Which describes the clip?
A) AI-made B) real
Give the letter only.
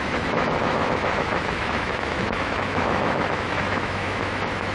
A